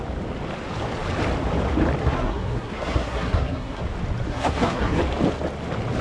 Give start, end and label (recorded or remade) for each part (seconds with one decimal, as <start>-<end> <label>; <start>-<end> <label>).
0.0-2.0 recorded; 2.0-3.8 remade; 3.8-4.3 recorded; 4.3-5.0 remade; 5.0-6.0 recorded